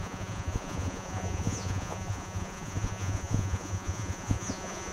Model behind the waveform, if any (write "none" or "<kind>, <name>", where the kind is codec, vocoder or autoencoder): vocoder, Vocos